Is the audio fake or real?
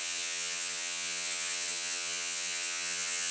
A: fake